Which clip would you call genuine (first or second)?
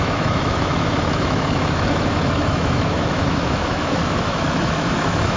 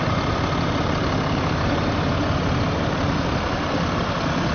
second